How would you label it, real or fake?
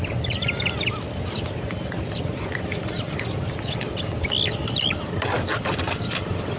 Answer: real